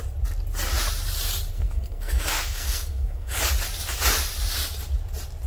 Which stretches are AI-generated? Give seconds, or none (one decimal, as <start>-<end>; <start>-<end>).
1.5-3.4